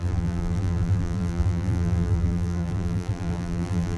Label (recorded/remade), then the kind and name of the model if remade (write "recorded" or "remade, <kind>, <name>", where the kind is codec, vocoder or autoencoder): remade, vocoder, BigVGAN v2